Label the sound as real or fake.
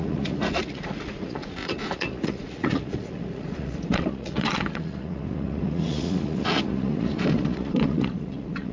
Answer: fake